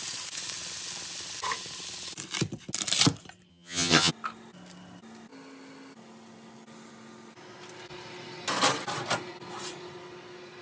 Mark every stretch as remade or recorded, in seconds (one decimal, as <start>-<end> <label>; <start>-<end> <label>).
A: 0.0-3.5 recorded; 3.5-4.1 remade; 4.1-10.6 recorded